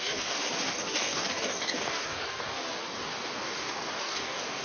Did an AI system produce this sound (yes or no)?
yes